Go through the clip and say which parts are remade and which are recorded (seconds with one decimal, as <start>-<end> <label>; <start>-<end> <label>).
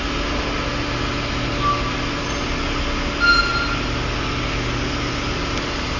0.0-6.0 recorded